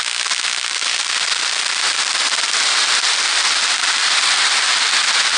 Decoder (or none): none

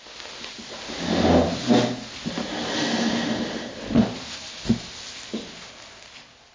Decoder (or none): none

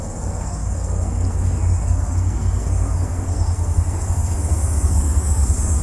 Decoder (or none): codec, SNAC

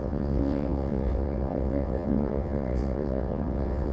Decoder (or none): vocoder, WaveNeXt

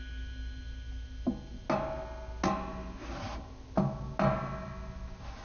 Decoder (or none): none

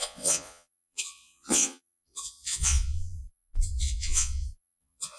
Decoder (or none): vocoder, Vocos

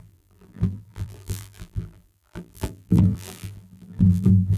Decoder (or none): vocoder, BigVGAN v2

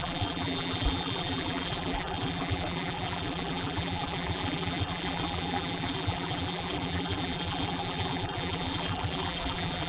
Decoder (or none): vocoder, BigVGAN v2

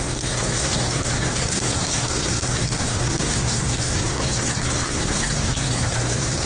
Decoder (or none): codec, SNAC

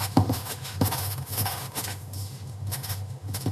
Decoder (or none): autoencoder, DAC-VAE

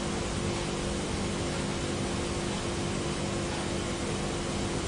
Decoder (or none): none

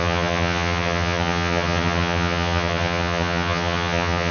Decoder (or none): vocoder, HiFi-GAN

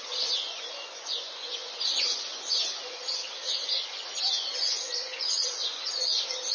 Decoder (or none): vocoder, Vocos